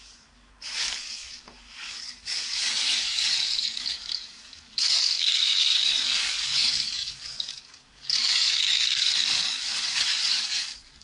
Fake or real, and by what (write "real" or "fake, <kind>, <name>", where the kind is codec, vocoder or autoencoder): fake, codec, DAC